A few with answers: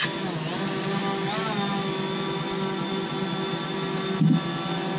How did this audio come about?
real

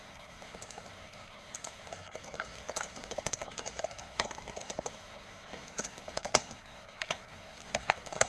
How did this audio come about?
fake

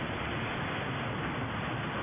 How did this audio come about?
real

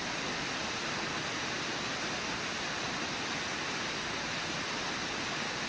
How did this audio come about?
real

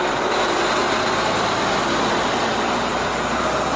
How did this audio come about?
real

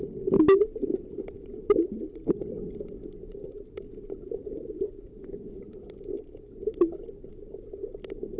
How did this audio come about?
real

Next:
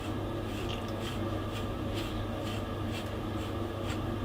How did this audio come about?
real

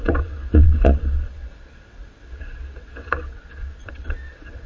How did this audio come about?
fake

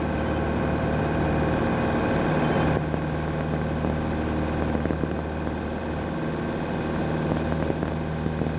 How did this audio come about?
real